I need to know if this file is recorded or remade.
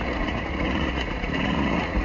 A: remade